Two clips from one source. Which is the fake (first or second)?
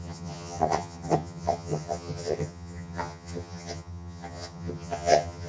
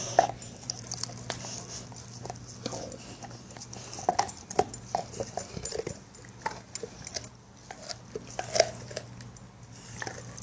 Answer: first